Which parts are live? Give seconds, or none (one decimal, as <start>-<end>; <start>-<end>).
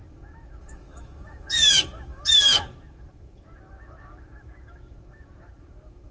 none